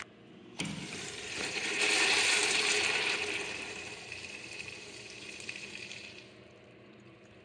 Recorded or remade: remade